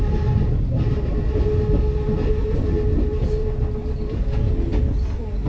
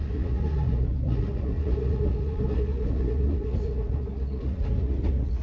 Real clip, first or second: first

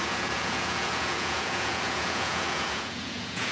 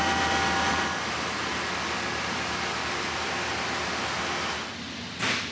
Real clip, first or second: second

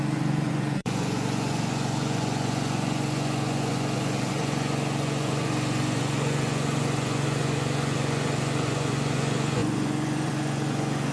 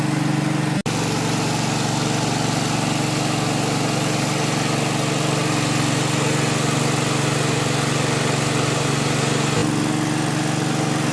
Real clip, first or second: second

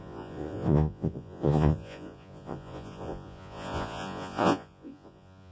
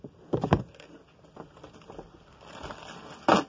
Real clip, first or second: second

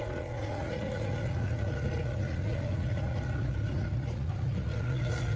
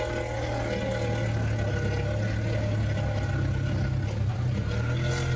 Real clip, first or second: second